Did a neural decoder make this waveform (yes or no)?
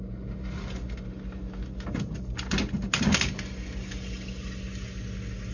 no